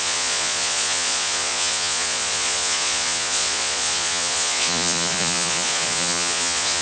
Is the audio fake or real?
fake